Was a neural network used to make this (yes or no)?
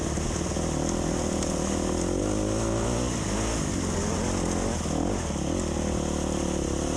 no